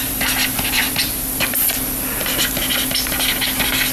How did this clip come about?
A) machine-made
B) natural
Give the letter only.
A